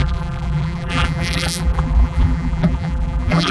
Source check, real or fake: fake